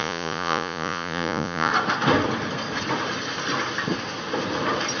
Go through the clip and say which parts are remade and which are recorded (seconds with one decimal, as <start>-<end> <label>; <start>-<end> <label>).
0.0-1.7 remade; 1.7-5.0 recorded